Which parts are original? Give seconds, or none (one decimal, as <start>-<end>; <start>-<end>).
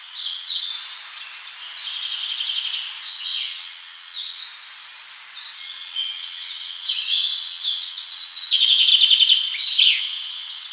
0.7-3.1; 4.4-5.6; 8.9-10.0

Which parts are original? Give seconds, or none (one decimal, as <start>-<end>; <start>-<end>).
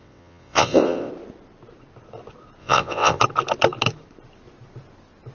1.1-2.6; 3.2-5.3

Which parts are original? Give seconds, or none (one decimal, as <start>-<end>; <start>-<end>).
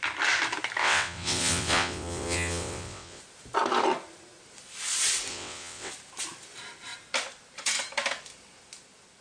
0.0-0.8; 3.2-5.3; 5.9-9.2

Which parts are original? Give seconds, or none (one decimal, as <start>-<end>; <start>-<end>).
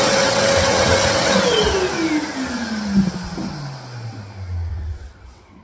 1.7-4.7